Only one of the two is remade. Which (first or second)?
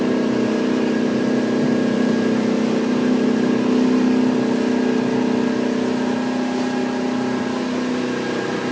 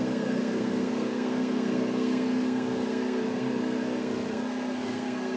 second